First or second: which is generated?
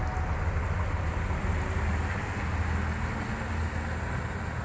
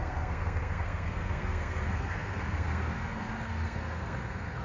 second